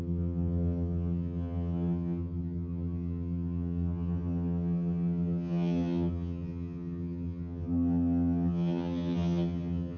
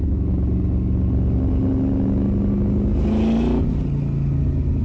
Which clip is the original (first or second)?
second